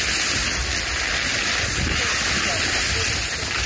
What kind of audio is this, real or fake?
real